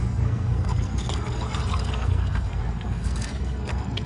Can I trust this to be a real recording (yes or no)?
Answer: no